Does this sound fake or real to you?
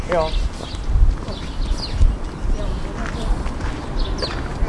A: real